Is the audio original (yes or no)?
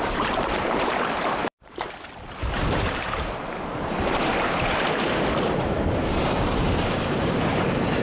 no